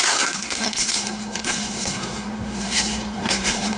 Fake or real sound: fake